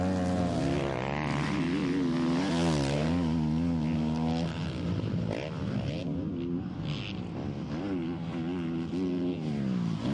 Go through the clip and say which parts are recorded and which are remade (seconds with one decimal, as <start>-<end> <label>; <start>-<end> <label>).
0.0-10.1 recorded